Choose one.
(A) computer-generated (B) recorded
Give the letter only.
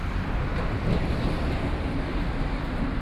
B